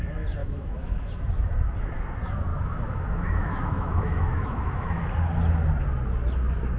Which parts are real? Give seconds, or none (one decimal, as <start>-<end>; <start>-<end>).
0.0-0.4; 1.1-2.5; 5.1-6.8